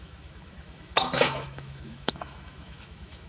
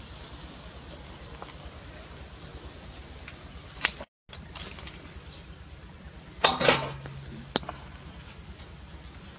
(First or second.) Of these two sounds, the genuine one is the second